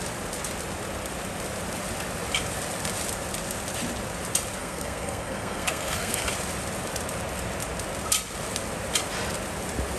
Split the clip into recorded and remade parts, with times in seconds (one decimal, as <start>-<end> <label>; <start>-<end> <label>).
0.0-4.6 recorded; 4.6-6.3 remade; 6.3-10.0 recorded